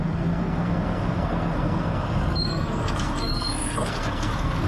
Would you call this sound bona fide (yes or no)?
no